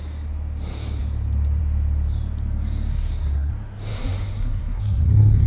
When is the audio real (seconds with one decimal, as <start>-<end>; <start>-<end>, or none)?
0.0-2.9; 3.5-3.9